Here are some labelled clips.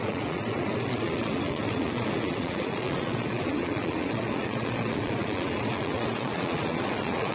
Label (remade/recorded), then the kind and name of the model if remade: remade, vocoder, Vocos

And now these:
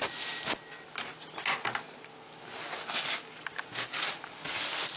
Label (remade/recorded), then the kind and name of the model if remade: recorded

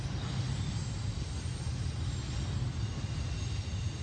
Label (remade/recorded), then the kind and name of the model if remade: recorded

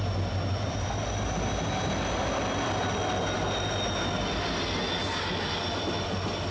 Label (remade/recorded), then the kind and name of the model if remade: recorded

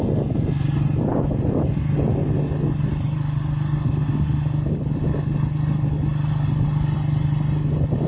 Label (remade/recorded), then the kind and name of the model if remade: recorded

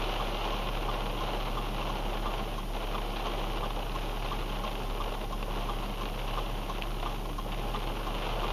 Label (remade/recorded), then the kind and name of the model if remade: recorded